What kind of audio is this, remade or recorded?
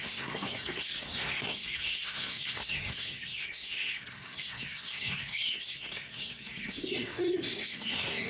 remade